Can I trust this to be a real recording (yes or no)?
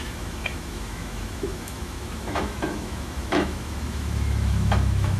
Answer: no